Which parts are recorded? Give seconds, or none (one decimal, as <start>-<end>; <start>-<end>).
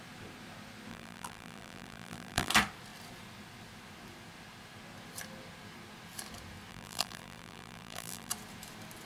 0.0-0.9; 2.5-6.7; 8.3-9.1